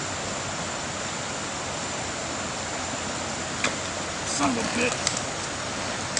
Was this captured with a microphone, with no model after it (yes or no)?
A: yes